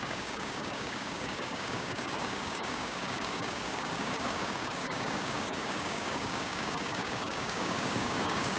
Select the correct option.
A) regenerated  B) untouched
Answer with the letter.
A